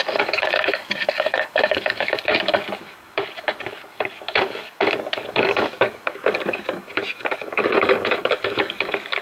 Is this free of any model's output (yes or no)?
no